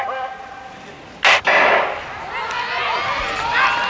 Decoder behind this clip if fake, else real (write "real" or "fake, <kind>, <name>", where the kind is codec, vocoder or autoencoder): real